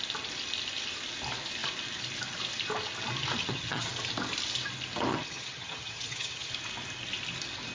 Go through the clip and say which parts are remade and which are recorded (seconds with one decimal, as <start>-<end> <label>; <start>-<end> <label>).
0.0-3.4 recorded; 3.4-3.9 remade; 3.9-5.1 recorded; 5.1-6.5 remade; 6.5-7.7 recorded